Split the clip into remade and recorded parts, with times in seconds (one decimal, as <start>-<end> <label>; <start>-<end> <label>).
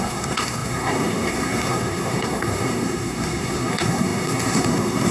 0.0-5.1 remade